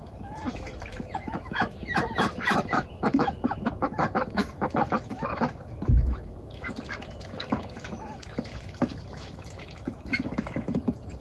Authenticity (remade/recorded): remade